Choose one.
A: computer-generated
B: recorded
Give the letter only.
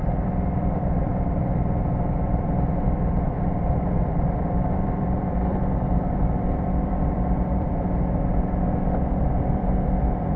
A